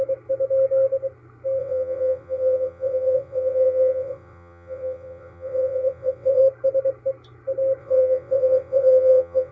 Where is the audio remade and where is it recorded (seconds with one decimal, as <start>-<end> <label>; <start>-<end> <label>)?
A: 0.0-1.6 recorded; 1.6-6.4 remade; 6.4-7.8 recorded; 7.8-9.5 remade